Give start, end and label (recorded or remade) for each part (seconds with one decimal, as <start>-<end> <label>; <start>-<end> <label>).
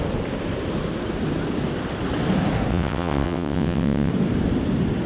0.0-2.7 recorded; 2.7-4.1 remade; 4.1-5.1 recorded